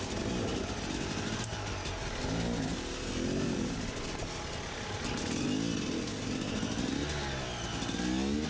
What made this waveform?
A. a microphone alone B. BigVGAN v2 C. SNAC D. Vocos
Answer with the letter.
A